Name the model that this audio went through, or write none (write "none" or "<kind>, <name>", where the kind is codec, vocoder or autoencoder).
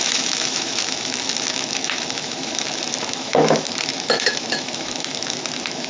autoencoder, DAC-VAE